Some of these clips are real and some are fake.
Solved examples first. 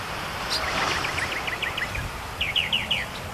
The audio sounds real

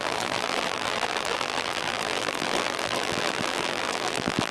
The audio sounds fake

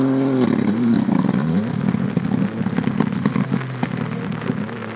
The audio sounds real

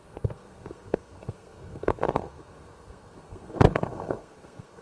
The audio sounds fake